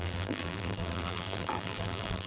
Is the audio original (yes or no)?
no